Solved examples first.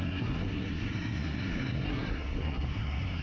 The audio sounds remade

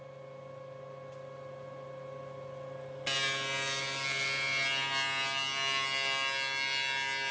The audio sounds recorded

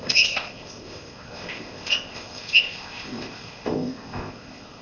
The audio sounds remade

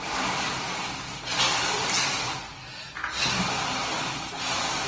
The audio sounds recorded